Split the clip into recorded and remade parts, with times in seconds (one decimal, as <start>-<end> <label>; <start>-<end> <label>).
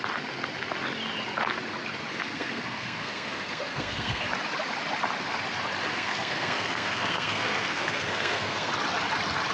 0.0-2.1 recorded; 2.1-4.3 remade; 4.3-5.9 recorded; 5.9-8.7 remade; 8.7-9.5 recorded